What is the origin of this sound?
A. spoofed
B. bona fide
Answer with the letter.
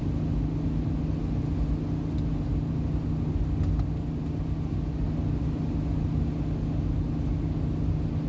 B